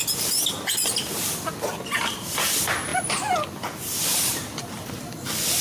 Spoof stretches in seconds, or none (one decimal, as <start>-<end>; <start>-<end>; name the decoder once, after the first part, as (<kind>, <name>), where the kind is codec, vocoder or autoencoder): none